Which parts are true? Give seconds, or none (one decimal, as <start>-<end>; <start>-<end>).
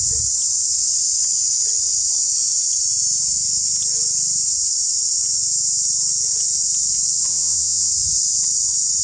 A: 0.0-7.3; 7.9-9.0